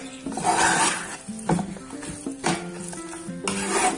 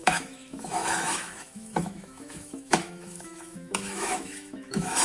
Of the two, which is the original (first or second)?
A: first